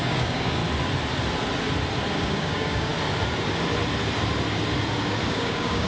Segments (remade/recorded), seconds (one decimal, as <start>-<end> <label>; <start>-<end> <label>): 0.0-0.6 remade; 0.6-2.1 recorded; 2.1-2.9 remade; 2.9-5.3 recorded; 5.3-5.9 remade